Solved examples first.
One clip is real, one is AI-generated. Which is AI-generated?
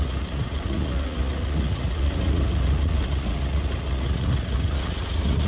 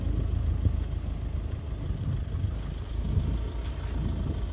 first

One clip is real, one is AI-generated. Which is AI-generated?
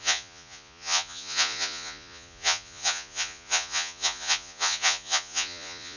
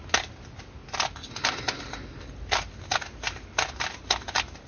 first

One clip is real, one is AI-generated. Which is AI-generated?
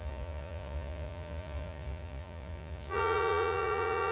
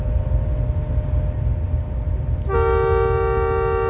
first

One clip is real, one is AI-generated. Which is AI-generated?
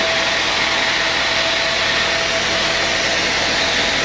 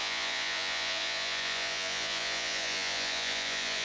second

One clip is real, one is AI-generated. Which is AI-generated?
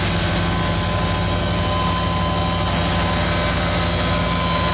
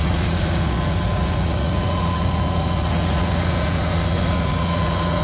second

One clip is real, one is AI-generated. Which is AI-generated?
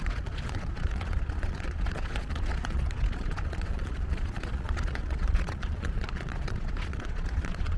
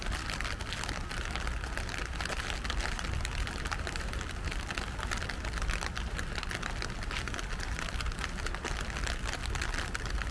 first